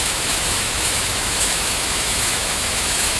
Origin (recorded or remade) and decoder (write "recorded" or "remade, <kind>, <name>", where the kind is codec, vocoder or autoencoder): remade, autoencoder, DAC-VAE